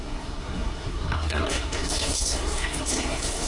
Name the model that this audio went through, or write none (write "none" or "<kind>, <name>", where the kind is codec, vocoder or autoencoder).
codec, SNAC